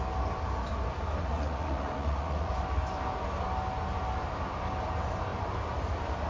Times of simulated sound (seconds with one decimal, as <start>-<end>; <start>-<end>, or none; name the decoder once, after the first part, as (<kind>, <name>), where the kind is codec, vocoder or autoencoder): 1.2-2.5 (vocoder, Vocos)

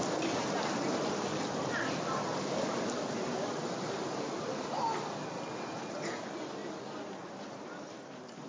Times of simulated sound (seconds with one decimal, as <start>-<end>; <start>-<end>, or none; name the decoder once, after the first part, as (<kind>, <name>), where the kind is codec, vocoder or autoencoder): none

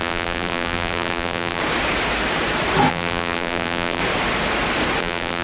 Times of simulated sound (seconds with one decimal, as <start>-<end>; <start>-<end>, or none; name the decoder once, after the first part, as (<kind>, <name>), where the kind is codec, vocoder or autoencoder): 0.0-1.6 (vocoder, BigVGAN v2); 2.9-4.0; 5.0-5.4

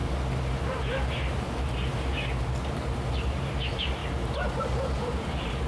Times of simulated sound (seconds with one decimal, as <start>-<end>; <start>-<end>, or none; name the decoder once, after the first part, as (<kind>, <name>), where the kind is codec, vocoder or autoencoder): 3.1-4.0 (vocoder, BigVGAN v2); 4.6-5.7